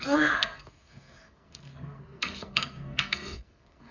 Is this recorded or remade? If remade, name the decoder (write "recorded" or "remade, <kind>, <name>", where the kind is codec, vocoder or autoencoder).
remade, codec, SNAC